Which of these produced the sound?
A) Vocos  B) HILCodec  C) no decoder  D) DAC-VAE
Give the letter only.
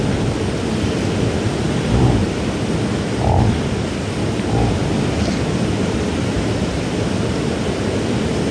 C